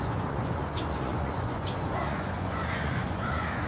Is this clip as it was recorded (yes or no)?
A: no